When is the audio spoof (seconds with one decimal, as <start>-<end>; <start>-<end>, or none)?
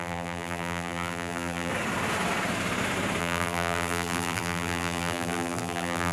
0.0-1.7; 3.2-6.1